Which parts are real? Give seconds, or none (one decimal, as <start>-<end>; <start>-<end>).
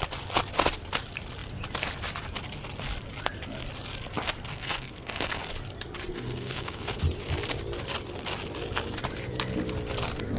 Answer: 0.0-4.5; 5.4-6.1; 7.0-10.4